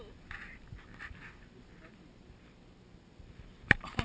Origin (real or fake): real